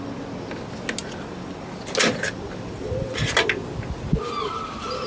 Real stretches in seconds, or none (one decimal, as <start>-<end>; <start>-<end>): 0.0-5.1